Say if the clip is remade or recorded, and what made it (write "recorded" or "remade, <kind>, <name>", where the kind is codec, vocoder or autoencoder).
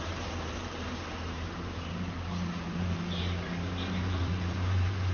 remade, vocoder, BigVGAN v2